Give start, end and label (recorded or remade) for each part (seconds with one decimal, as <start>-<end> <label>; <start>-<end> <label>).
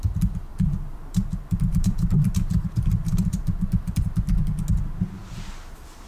0.0-0.5 recorded; 0.5-4.0 remade; 4.0-6.1 recorded